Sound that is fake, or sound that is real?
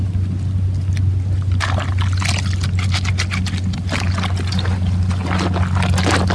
real